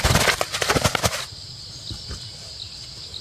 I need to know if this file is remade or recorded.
recorded